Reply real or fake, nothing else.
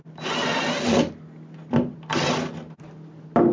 real